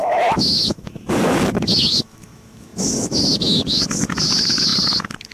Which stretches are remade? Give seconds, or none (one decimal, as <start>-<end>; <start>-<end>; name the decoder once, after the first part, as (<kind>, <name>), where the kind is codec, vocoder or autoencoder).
0.0-5.3 (autoencoder, DAC-VAE)